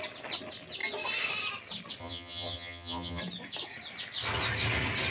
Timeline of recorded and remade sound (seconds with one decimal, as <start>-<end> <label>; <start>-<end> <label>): 0.0-2.0 recorded; 2.0-3.2 remade; 3.2-5.1 recorded